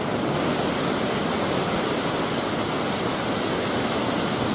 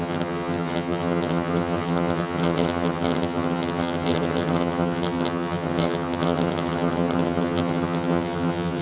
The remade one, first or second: second